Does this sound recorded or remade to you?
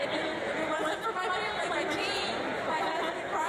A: recorded